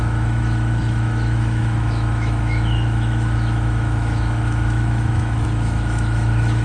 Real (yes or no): no